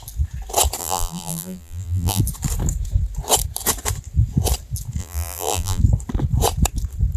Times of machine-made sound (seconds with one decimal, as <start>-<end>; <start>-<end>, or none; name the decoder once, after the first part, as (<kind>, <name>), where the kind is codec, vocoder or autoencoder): 0.8-2.2 (vocoder, BigVGAN v2); 5.0-5.8

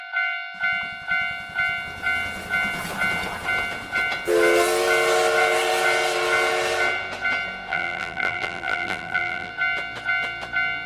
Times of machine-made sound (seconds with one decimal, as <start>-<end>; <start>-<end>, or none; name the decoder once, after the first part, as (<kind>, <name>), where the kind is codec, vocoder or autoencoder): 7.7-9.5 (vocoder, BigVGAN v2)

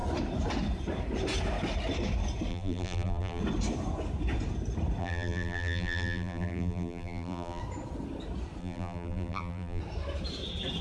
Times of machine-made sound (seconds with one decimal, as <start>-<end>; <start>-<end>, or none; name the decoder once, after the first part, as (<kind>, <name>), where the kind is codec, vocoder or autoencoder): 2.5-3.4 (vocoder, BigVGAN v2); 5.0-7.6; 8.6-9.8

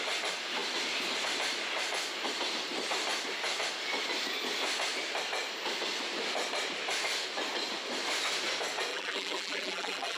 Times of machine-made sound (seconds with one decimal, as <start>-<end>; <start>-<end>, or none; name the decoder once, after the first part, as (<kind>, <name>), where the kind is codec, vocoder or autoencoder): 8.9-10.2 (vocoder, BigVGAN v2)

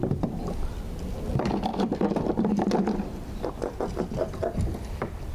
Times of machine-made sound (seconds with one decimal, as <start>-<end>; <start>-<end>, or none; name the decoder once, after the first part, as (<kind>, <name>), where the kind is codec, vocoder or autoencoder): 0.0-5.3 (vocoder, BigVGAN v2)